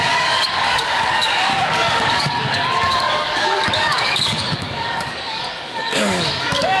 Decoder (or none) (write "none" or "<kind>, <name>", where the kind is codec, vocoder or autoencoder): codec, DAC